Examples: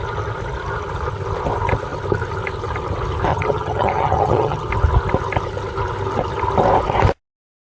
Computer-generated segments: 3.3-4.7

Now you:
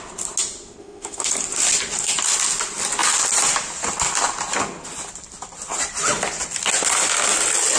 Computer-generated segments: 0.8-1.3

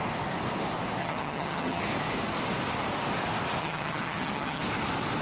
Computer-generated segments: 1.0-1.8; 3.6-4.6